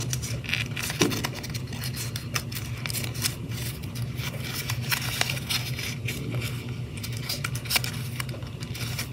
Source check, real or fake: real